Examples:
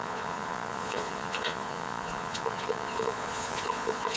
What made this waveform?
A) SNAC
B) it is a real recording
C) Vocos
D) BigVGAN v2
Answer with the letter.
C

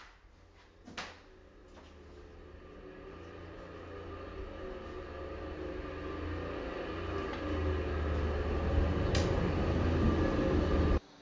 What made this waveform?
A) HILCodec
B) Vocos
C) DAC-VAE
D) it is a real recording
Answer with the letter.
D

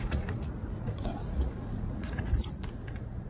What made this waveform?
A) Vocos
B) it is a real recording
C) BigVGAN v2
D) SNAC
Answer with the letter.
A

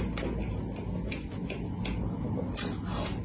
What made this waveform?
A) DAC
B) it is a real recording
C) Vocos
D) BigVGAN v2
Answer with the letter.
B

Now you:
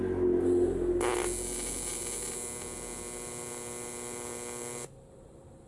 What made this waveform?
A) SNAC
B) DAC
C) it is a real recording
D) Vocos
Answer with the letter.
C